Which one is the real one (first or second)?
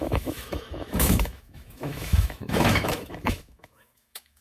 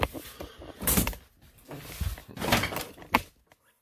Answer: second